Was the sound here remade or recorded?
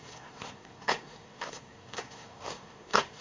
remade